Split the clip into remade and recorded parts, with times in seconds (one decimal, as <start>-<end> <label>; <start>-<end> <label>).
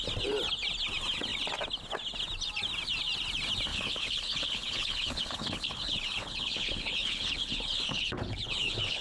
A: 0.0-3.7 recorded; 3.7-9.0 remade